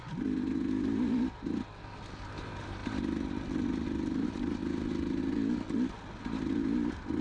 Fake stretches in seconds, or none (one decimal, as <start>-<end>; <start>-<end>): none